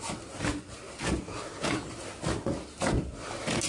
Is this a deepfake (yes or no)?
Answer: no